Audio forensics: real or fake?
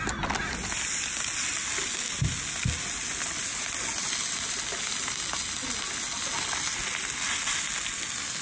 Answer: real